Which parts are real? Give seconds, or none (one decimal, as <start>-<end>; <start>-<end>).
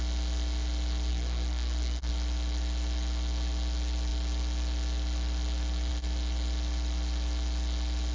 0.0-1.1; 2.1-8.1